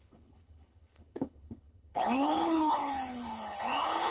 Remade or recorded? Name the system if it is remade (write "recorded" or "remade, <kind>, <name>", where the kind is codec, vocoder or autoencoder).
remade, codec, HILCodec